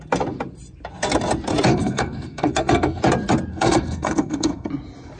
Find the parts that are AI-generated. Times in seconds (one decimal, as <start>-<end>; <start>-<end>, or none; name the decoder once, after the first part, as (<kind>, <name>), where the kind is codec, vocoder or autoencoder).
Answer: 1.7-3.0 (codec, SNAC); 3.5-4.7